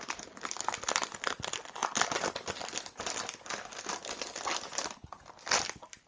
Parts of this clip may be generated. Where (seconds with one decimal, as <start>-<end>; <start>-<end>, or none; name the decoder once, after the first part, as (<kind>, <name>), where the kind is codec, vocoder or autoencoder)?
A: none